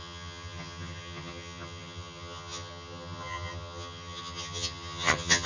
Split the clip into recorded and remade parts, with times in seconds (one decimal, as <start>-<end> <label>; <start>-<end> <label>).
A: 0.0-5.5 remade